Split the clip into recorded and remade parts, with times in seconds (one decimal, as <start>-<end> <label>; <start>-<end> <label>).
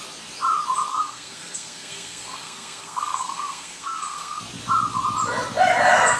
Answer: 0.0-0.9 recorded; 0.9-4.4 remade; 4.4-6.2 recorded